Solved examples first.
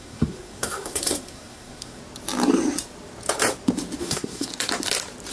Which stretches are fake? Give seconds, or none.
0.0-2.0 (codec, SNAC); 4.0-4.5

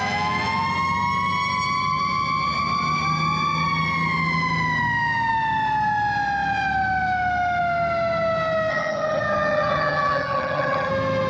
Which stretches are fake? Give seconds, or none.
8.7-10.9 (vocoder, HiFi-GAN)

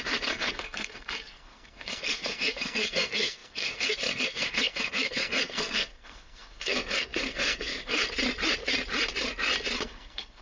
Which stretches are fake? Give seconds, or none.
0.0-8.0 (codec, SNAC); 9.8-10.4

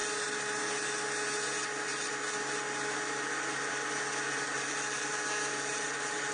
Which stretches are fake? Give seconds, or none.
none

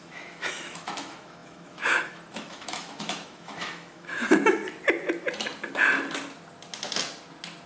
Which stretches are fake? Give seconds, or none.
0.0-4.6 (autoencoder, DAC-VAE)